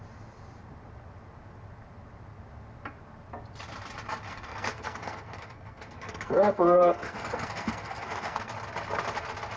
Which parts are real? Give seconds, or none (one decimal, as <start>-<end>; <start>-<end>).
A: 0.0-4.3; 8.5-9.6